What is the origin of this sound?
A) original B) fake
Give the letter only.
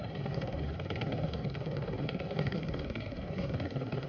B